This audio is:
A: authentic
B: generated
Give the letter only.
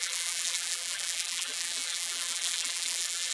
B